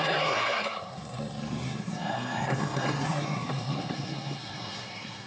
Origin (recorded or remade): remade